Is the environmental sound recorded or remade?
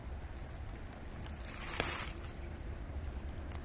remade